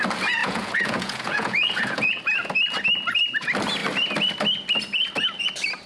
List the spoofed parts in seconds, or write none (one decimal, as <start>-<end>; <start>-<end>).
0.4-2.2